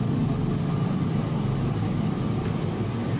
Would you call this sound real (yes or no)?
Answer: yes